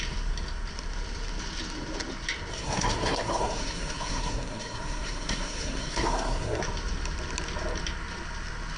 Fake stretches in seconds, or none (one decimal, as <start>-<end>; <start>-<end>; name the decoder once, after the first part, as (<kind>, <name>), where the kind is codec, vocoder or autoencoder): 2.5-6.6 (codec, SNAC)